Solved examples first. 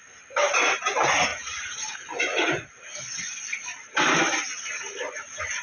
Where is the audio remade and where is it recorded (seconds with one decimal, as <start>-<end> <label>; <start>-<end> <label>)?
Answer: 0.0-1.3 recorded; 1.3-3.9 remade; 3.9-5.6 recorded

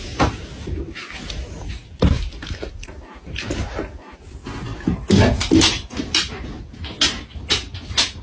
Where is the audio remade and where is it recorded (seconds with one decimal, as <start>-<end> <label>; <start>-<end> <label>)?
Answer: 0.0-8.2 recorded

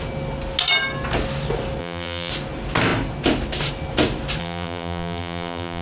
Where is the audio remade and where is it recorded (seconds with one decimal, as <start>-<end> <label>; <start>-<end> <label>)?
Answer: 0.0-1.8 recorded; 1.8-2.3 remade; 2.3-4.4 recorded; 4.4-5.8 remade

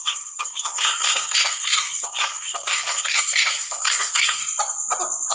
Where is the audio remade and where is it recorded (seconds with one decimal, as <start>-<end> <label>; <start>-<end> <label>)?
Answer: 0.0-4.4 remade; 4.4-5.3 recorded

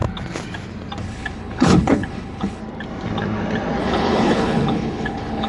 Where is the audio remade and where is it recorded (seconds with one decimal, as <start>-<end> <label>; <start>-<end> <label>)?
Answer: 0.0-1.0 recorded; 1.0-2.6 remade; 2.6-3.8 recorded; 3.8-5.5 remade